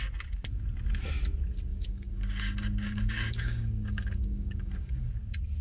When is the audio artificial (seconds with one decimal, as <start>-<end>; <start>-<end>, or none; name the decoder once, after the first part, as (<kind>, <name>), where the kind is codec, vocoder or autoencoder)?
1.7-5.1 (codec, DAC)